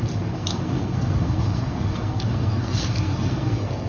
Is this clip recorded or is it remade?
remade